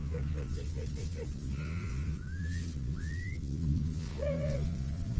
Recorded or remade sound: remade